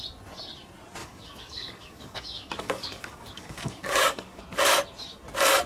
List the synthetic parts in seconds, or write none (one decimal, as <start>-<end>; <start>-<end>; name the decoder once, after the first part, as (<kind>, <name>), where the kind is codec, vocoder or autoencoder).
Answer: 1.0-4.4 (codec, DAC)